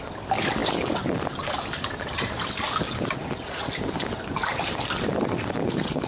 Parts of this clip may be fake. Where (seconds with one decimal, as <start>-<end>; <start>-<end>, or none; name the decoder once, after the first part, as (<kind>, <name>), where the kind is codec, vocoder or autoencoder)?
5.6-6.1 (codec, HILCodec)